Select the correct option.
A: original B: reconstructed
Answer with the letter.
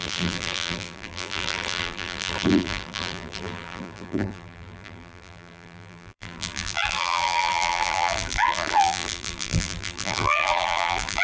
B